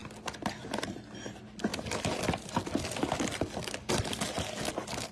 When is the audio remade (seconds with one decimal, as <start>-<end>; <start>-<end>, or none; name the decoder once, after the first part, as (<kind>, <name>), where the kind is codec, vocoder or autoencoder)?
0.0-0.9 (vocoder, BigVGAN v2); 1.7-3.9